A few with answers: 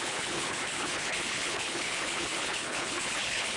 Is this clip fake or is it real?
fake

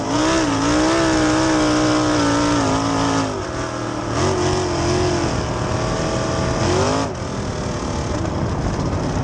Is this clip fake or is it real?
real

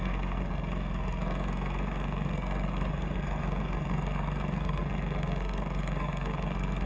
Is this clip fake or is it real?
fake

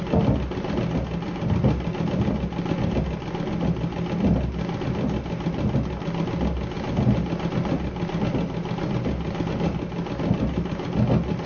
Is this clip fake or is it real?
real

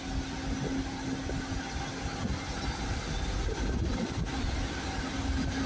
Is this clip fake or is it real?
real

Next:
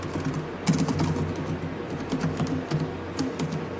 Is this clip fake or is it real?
real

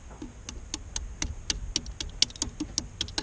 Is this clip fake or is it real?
real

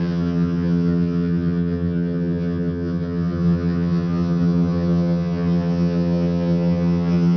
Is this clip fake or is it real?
fake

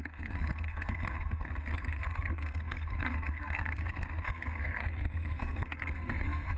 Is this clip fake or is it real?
fake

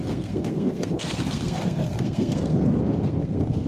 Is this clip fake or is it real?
fake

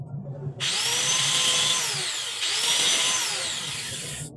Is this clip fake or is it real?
real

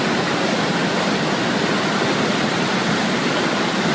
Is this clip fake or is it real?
real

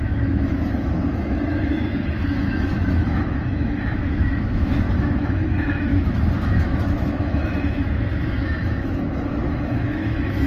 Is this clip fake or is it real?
fake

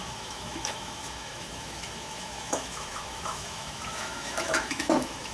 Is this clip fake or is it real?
fake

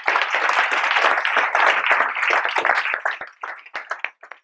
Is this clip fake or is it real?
real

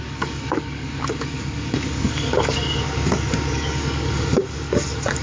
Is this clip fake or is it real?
fake